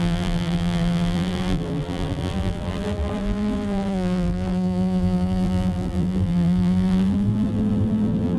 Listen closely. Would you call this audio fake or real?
fake